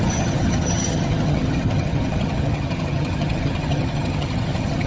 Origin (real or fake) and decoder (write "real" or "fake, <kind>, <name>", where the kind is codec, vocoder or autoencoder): fake, vocoder, HiFi-GAN